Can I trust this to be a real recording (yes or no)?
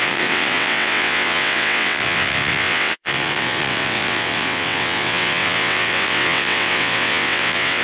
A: no